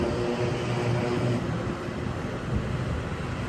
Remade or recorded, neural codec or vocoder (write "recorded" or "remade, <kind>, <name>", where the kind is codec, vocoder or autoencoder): recorded